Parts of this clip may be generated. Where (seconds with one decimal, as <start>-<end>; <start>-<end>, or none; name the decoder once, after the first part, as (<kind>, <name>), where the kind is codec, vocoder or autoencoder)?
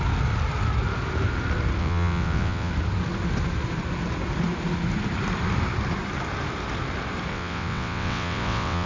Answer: 1.8-2.7 (vocoder, WaveNeXt); 7.3-8.9